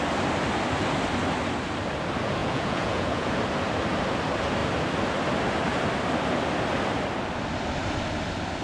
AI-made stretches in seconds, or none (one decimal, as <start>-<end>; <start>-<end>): 2.4-3.3